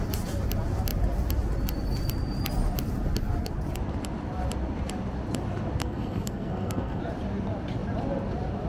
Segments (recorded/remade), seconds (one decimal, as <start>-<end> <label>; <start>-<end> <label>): 0.0-5.8 recorded; 5.8-7.0 remade; 7.0-8.7 recorded